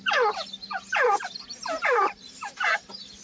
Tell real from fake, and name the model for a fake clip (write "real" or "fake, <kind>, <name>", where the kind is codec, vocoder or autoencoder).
real